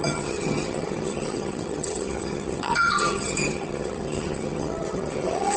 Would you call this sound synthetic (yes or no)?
yes